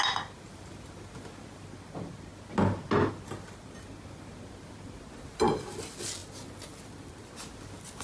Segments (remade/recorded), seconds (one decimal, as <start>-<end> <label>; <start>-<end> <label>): 0.0-8.0 recorded